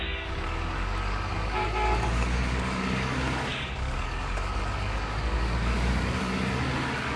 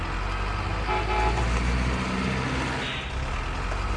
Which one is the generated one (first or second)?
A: first